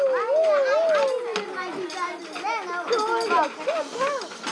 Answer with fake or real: real